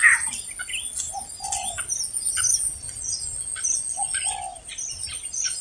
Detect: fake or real real